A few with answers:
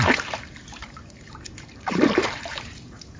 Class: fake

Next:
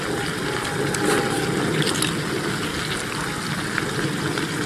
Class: real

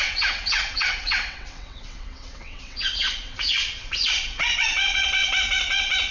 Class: fake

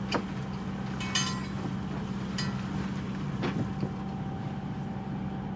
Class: real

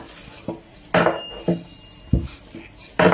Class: real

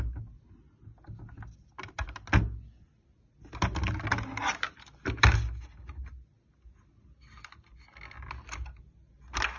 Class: real